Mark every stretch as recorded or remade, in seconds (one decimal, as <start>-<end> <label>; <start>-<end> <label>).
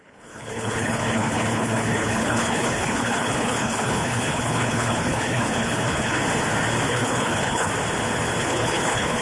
0.0-6.2 remade; 6.2-6.9 recorded; 6.9-7.7 remade; 7.7-8.4 recorded; 8.4-9.2 remade